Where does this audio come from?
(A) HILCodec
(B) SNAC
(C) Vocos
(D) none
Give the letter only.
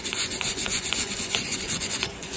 C